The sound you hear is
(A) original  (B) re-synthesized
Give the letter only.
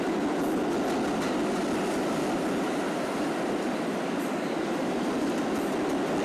A